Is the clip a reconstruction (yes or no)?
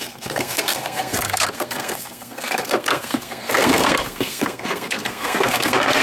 yes